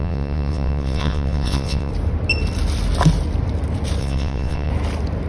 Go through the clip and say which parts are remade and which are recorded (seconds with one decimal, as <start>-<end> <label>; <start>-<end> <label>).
0.0-1.9 remade; 1.9-4.0 recorded; 4.0-4.7 remade; 4.7-5.3 recorded